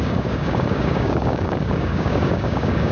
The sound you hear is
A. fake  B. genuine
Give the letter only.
A